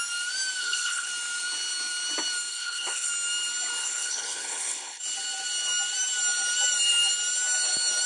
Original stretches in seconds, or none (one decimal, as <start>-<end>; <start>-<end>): 0.0-0.6; 1.1-2.5; 3.1-3.8; 5.0-8.1